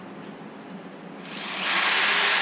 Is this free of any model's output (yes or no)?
yes